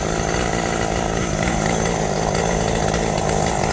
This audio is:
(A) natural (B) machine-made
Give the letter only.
A